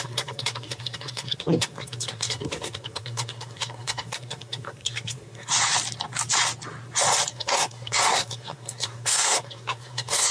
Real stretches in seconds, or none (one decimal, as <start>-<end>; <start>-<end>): 5.5-7.3